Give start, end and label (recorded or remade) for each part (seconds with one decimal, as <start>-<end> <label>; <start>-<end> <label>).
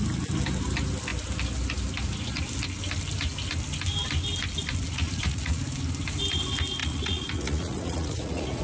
0.0-4.9 recorded; 4.9-5.6 remade; 5.6-6.8 recorded; 6.8-8.6 remade